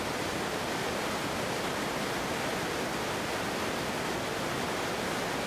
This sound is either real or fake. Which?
real